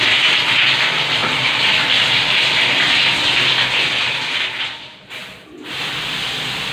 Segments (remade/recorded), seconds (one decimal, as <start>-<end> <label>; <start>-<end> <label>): 0.0-1.2 recorded; 1.2-3.4 remade; 3.4-6.7 recorded

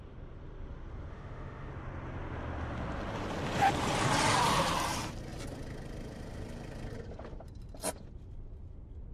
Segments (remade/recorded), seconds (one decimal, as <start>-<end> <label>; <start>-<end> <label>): 0.0-1.1 recorded; 1.1-1.7 remade; 1.7-9.1 recorded